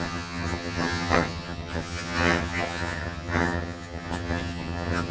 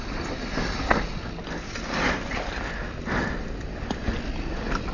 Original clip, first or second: second